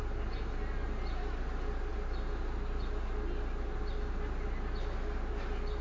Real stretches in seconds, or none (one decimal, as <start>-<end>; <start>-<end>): 0.0-5.8